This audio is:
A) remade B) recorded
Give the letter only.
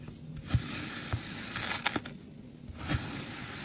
B